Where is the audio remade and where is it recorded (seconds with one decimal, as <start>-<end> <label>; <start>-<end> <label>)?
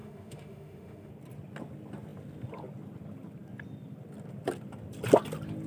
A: 0.0-1.1 remade; 1.1-5.7 recorded